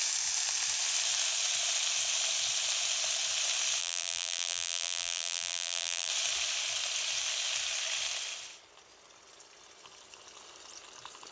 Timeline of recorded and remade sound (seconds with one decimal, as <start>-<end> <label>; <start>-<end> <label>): 0.0-3.8 recorded; 3.8-6.1 remade; 6.1-11.3 recorded